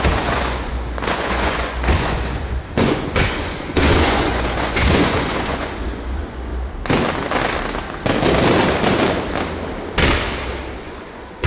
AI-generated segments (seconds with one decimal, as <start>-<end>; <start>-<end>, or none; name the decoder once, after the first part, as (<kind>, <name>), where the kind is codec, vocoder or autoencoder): 0.0-6.5 (vocoder, Vocos); 10.8-11.5